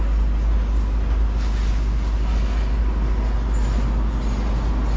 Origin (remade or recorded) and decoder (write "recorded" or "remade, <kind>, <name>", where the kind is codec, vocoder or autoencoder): recorded